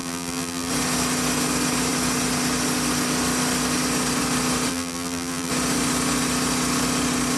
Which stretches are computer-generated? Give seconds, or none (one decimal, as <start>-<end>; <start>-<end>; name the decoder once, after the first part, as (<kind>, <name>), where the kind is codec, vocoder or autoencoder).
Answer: 0.0-0.7 (vocoder, BigVGAN v2); 4.7-5.5